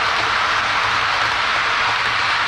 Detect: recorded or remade recorded